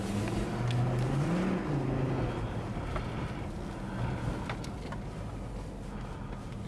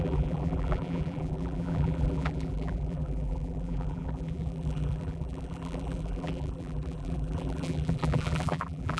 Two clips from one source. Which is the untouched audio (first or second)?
first